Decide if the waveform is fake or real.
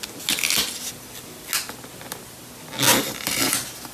real